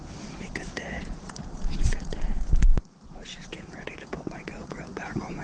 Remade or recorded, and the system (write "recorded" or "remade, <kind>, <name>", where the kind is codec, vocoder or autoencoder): remade, vocoder, Vocos